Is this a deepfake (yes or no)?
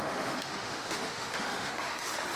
yes